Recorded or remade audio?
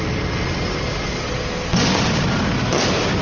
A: recorded